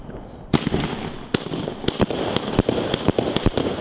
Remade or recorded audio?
recorded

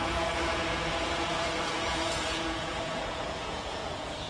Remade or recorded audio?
remade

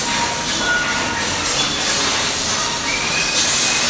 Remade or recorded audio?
recorded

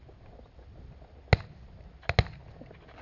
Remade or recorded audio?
recorded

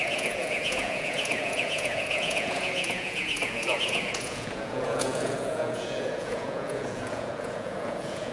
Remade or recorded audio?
remade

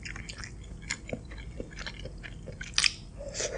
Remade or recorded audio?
recorded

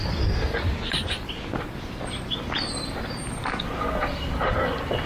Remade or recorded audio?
recorded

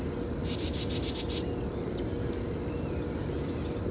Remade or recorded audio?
recorded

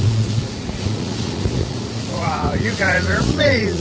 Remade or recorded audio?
remade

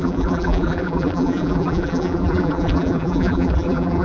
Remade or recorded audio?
remade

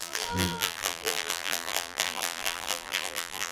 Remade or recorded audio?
remade